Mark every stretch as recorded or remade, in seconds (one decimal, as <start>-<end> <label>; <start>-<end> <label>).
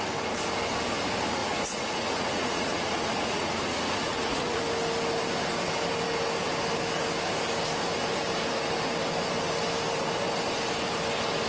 0.0-1.4 recorded; 1.4-4.6 remade; 4.6-11.5 recorded